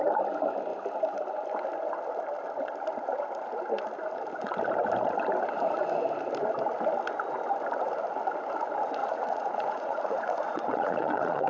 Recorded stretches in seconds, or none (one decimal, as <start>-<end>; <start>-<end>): 0.0-9.0